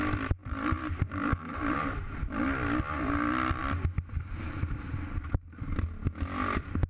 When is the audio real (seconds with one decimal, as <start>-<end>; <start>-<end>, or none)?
0.0-0.4; 2.1-6.9